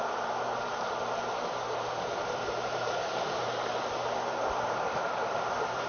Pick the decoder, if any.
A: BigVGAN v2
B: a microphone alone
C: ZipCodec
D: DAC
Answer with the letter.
A